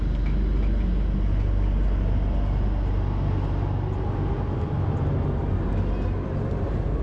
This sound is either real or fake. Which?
real